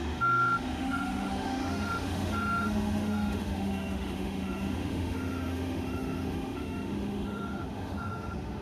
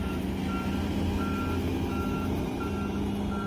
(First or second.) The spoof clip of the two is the first